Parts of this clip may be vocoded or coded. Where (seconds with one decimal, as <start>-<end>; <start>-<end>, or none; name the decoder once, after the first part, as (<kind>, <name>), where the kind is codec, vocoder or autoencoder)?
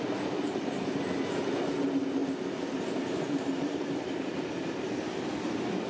0.0-5.9 (vocoder, BigVGAN v2)